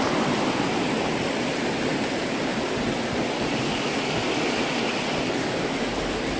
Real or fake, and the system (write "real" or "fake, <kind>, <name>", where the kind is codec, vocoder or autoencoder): real